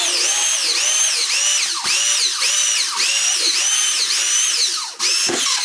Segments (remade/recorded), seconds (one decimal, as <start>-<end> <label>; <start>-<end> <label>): 0.0-5.6 recorded